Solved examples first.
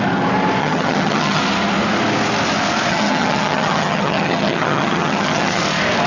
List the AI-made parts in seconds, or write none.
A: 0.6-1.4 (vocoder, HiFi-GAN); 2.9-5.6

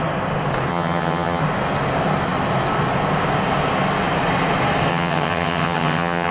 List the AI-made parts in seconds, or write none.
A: 0.7-1.4 (vocoder, HiFi-GAN); 4.9-6.3